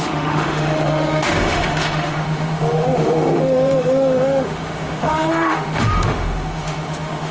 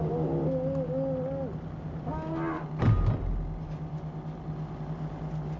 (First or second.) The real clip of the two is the second